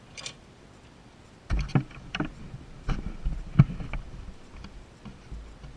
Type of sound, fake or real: fake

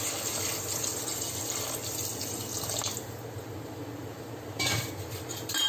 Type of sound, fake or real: real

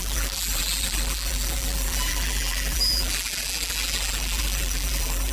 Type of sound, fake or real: fake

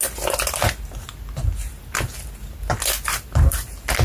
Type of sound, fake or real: real